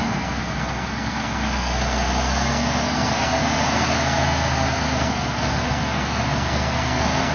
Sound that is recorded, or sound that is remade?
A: remade